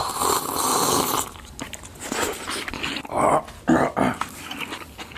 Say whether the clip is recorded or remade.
recorded